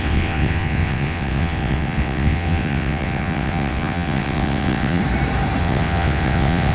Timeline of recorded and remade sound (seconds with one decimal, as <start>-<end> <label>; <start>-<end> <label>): 0.0-5.0 remade; 5.0-5.6 recorded; 5.6-6.7 remade

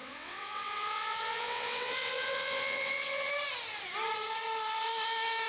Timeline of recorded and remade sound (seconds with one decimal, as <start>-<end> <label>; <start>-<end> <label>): 0.0-3.3 remade; 3.3-5.5 recorded

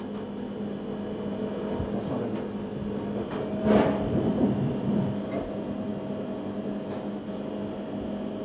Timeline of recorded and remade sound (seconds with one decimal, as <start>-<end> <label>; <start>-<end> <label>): 0.0-8.4 recorded

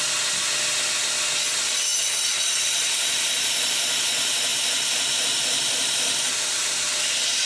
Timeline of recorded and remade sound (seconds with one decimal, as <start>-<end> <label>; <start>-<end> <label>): 0.0-7.5 recorded

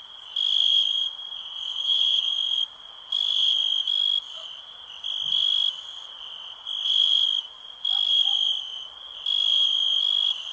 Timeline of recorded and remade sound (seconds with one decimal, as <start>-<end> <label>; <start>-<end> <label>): 0.0-0.9 recorded; 0.9-2.6 remade; 2.6-10.5 recorded

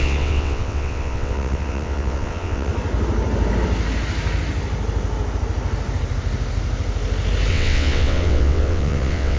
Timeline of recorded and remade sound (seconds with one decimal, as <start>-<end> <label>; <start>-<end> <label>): 0.0-2.7 remade; 2.7-7.5 recorded; 7.5-9.4 remade

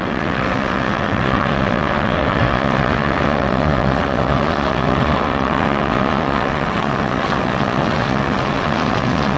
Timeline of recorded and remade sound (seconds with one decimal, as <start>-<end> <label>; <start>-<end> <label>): 0.0-9.4 remade